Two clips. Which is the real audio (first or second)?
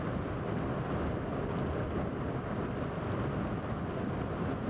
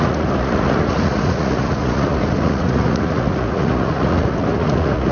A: first